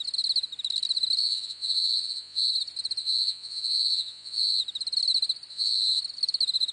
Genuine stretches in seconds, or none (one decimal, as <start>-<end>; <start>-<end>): 0.0-1.2; 2.5-3.0; 4.6-5.5; 6.0-6.7